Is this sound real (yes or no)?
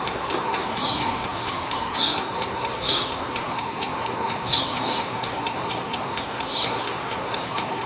no